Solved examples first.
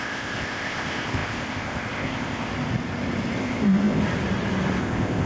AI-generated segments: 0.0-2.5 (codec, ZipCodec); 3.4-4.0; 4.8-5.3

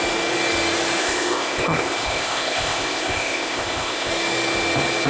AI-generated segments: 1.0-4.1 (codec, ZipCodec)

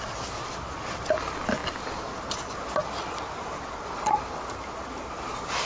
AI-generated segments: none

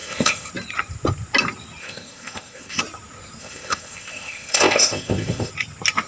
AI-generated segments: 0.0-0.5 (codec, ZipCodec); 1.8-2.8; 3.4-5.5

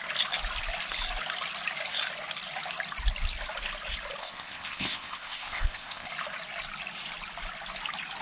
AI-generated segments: 4.2-6.1 (codec, ZipCodec)

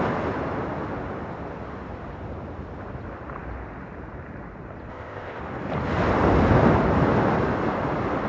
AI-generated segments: 4.9-5.4 (codec, ZipCodec)

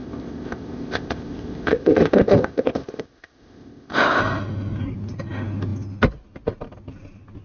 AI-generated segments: 0.0-4.2 (codec, ZipCodec)

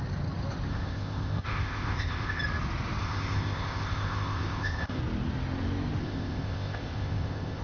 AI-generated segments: 0.7-2.4 (codec, ZipCodec); 3.0-5.0; 6.0-7.6